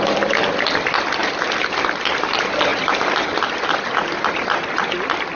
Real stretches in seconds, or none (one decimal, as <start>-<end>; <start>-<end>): 0.0-5.4